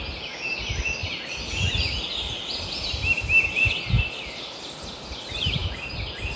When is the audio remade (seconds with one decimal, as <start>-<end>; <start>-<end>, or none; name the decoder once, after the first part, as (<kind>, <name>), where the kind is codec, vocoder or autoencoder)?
none